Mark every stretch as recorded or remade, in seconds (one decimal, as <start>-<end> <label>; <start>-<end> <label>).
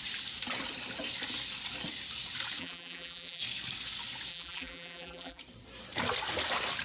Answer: 0.0-2.6 recorded; 2.6-3.4 remade; 3.4-4.3 recorded; 4.3-5.4 remade; 5.4-6.8 recorded